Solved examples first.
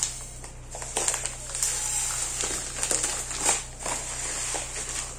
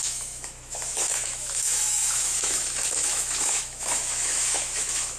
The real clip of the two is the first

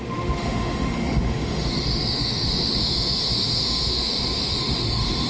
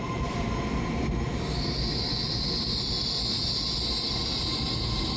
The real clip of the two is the second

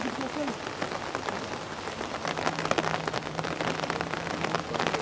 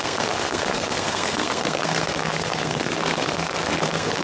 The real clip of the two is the first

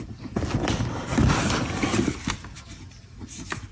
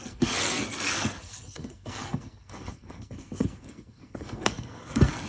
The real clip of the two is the first